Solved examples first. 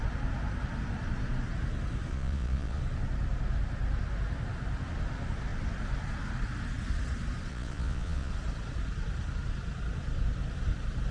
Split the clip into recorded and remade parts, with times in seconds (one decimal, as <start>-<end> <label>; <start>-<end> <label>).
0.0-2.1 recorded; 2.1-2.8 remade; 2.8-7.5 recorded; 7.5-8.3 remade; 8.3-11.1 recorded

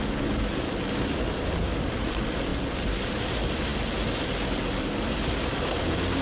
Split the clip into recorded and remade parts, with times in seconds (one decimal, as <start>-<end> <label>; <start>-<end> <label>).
0.0-6.2 recorded

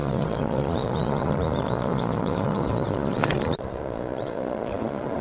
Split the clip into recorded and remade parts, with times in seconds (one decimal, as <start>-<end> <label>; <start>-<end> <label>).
0.0-5.2 remade